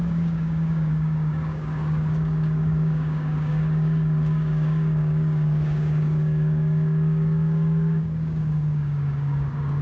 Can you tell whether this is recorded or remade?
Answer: remade